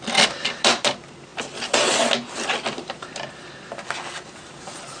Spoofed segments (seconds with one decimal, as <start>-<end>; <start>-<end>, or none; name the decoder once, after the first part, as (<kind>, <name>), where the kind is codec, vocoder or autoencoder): none